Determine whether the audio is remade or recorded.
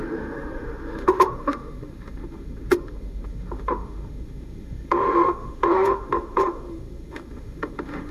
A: remade